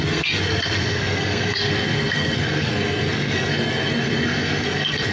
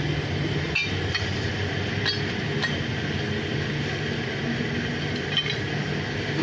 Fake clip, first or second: first